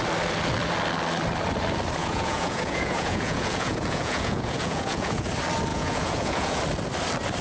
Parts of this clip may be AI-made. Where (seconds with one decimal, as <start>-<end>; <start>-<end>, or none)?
2.0-5.3; 5.7-6.6